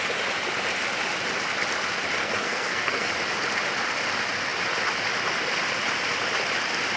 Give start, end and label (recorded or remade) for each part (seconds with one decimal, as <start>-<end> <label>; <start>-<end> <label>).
0.0-2.2 recorded; 2.2-3.1 remade; 3.1-7.0 recorded